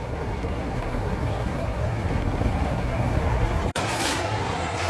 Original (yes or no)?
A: no